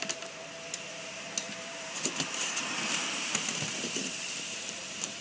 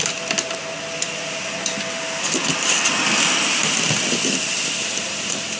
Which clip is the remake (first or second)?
first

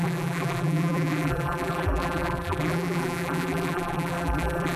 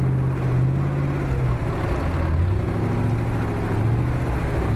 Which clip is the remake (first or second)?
first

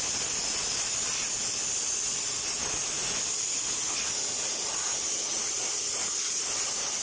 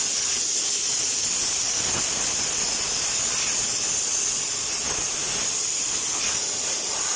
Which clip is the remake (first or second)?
second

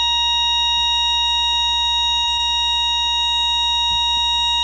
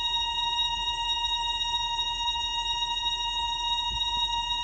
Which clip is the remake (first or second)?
second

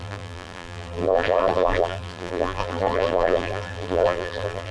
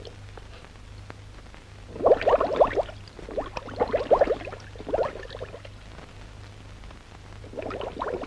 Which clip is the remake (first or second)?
first